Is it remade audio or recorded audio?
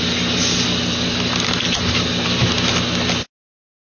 recorded